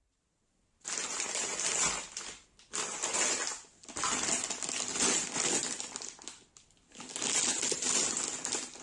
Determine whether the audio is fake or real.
real